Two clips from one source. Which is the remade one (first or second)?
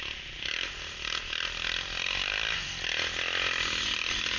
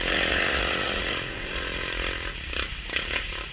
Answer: second